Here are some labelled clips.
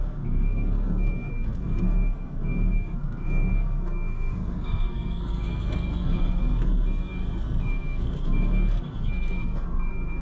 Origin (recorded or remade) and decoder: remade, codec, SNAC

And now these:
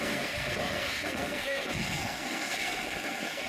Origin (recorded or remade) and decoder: remade, codec, SNAC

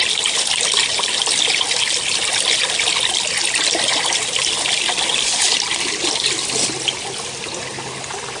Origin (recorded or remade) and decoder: recorded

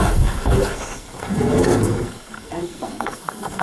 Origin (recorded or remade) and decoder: remade, codec, SNAC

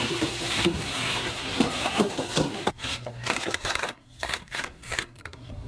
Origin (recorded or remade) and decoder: remade, codec, SNAC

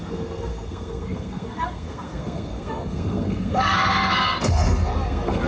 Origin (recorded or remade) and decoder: remade, codec, SNAC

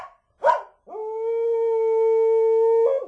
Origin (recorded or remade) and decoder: recorded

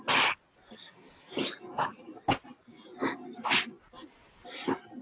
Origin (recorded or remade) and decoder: recorded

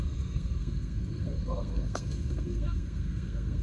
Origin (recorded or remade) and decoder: remade, codec, SNAC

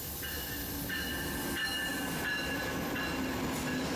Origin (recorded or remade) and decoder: recorded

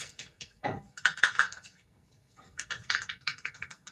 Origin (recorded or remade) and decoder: remade, codec, SNAC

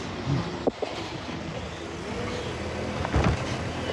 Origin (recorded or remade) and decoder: recorded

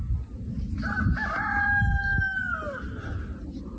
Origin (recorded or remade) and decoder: recorded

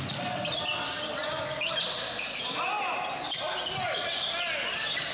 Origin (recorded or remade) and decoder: recorded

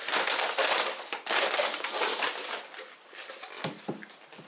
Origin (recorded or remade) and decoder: recorded